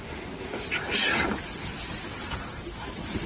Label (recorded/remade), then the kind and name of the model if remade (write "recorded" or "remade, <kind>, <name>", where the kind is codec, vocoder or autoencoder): recorded